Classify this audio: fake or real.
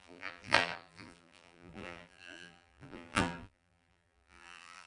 fake